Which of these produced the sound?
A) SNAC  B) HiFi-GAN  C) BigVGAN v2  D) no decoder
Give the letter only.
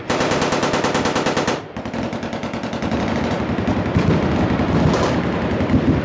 C